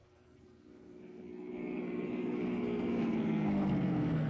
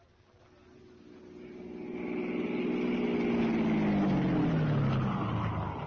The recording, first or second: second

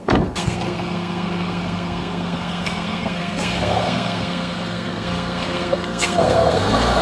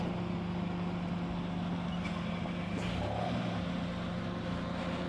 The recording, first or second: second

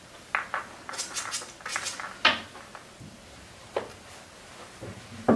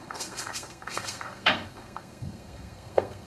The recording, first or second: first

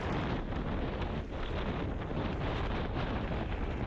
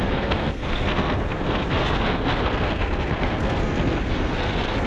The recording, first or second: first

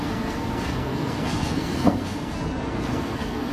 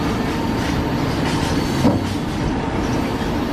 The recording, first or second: second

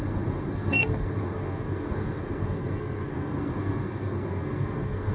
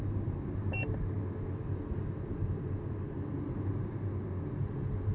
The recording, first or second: second